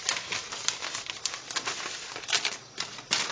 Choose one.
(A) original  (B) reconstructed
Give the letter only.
A